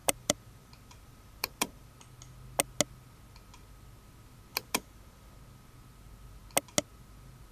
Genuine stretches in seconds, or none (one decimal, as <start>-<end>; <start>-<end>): 1.9-4.5; 5.3-7.5